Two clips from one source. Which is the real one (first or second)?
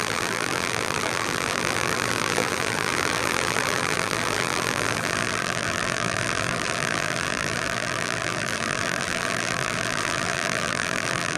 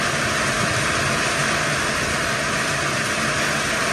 second